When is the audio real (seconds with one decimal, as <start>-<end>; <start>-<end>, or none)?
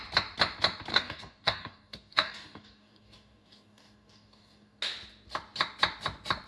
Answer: 0.0-0.9; 4.8-6.5